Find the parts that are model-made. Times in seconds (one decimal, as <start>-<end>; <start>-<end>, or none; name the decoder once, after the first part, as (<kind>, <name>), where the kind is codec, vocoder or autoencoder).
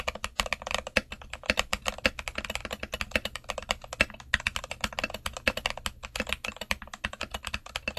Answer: none